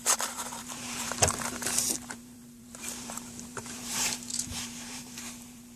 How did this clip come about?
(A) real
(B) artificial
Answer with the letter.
B